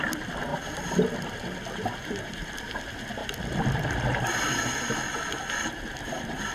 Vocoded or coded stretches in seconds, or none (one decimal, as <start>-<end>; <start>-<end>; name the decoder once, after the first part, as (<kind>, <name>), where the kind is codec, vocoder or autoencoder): 0.0-3.2 (vocoder, BigVGAN v2); 5.6-6.5